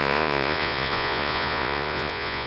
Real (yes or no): no